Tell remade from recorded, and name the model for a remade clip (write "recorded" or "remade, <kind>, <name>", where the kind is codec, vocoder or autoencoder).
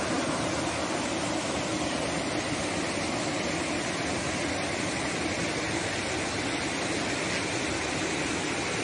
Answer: recorded